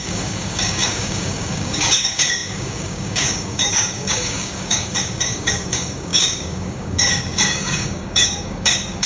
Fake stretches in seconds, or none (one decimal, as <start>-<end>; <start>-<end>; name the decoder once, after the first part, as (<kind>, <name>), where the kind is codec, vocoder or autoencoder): 0.0-9.1 (codec, DAC)